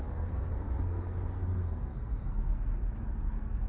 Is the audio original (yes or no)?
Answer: no